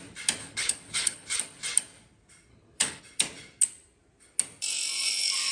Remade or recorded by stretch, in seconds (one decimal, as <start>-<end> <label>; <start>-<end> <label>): 0.0-0.4 recorded; 0.4-1.4 remade; 1.4-2.5 recorded; 2.5-3.0 remade; 3.0-5.5 recorded